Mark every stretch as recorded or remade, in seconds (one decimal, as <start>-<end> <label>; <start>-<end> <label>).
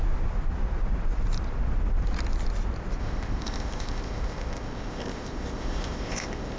0.0-3.0 recorded; 3.0-6.6 remade